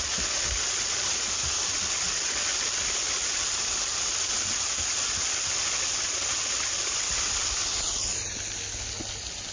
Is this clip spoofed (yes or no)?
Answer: no